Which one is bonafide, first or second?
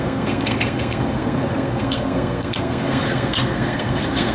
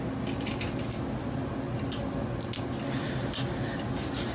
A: second